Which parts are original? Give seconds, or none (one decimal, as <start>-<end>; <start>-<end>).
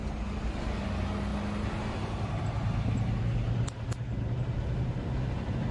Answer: 0.0-5.7